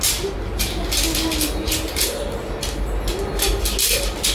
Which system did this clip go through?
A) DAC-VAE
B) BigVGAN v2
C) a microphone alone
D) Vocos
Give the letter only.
C